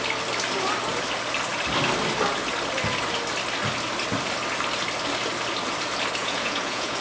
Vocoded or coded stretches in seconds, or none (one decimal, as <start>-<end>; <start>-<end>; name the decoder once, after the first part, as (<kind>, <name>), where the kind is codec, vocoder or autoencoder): 6.2-7.0 (vocoder, Vocos)